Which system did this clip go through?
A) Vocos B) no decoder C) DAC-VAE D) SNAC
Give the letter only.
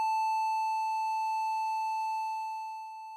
B